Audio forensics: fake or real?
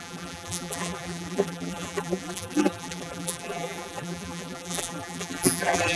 fake